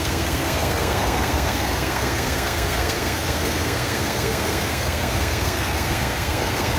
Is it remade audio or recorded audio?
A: remade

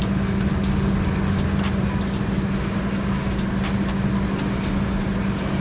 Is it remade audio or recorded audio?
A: recorded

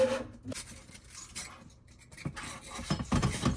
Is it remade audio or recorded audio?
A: recorded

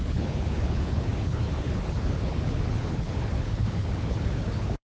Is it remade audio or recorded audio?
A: remade